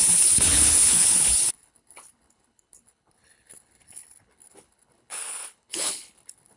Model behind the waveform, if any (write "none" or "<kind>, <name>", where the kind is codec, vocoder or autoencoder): codec, HILCodec